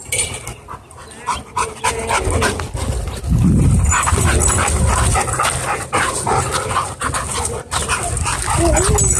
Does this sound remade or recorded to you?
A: recorded